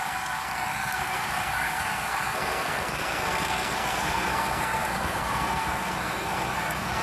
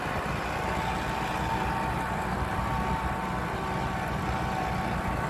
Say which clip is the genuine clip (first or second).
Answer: second